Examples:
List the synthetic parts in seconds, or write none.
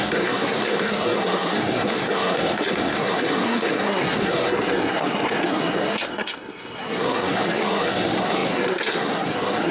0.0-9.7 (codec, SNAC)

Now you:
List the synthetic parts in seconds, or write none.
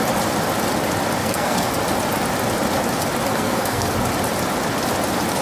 1.2-1.7 (codec, SNAC); 3.3-3.9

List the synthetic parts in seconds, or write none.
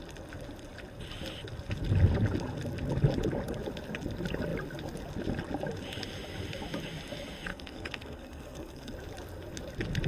7.5-8.9 (codec, SNAC)